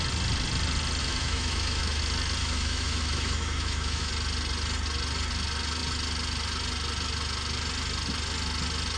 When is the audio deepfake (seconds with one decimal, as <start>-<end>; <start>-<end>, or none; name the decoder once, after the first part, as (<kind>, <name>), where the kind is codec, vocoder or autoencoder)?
1.0-2.0 (autoencoder, DAC-VAE); 2.4-4.1